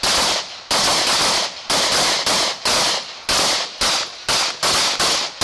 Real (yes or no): yes